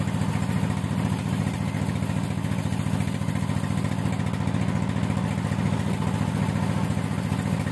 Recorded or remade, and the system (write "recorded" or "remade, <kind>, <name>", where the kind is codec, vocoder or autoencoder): recorded